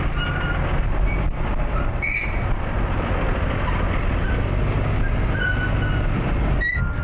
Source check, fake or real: real